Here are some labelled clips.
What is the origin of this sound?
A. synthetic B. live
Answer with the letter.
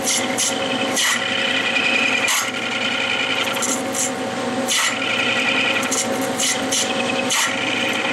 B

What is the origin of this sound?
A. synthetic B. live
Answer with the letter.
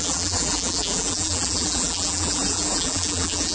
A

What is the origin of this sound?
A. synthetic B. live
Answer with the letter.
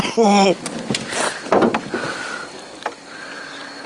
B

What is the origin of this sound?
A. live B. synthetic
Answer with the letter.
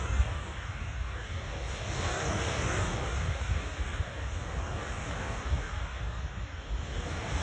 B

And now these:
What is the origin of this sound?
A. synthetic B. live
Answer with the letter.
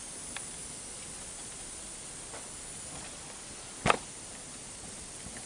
B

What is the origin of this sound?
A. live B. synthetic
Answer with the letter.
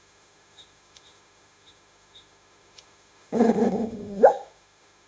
B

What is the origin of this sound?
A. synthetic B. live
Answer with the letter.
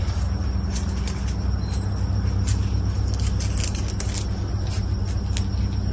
B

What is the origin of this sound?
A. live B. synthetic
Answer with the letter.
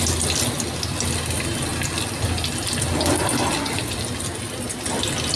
A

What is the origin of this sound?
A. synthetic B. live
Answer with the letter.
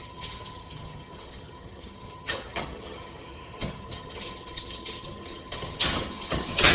A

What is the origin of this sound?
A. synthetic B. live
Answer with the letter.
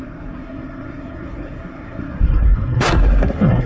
A